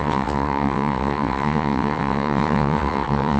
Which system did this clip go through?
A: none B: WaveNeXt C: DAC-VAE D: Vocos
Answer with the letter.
B